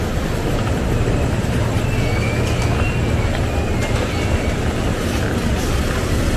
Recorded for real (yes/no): yes